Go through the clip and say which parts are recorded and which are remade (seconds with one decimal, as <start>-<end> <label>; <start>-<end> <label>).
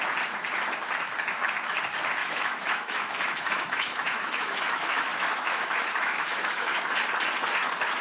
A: 0.0-2.2 recorded; 2.2-6.8 remade; 6.8-8.0 recorded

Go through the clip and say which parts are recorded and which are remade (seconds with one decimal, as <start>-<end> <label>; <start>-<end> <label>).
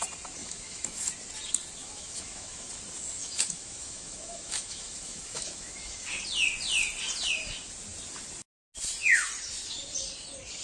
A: 0.0-0.4 recorded; 0.4-1.1 remade; 1.1-1.8 recorded; 1.8-2.7 remade; 2.7-3.2 recorded; 3.2-6.0 remade; 6.0-10.6 recorded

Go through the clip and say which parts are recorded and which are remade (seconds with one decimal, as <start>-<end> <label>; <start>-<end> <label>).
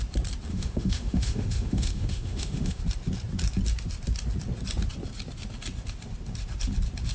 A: 0.0-0.5 recorded; 0.5-2.8 remade; 2.8-7.1 recorded